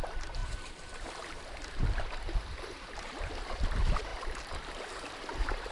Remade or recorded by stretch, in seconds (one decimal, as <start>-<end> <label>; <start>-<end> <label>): 0.0-5.7 remade